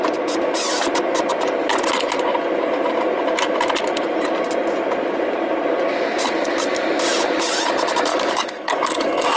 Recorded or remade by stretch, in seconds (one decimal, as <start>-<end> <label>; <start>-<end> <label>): 0.0-8.1 recorded; 8.1-9.4 remade